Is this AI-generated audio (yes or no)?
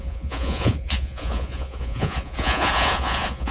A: yes